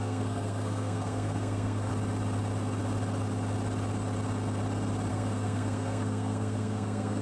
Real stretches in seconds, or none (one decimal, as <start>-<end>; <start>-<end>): 1.9-5.1